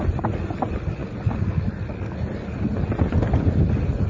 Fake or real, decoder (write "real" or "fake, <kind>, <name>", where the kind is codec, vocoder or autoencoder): real